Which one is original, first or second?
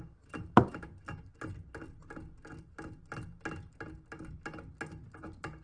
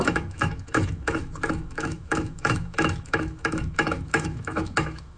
first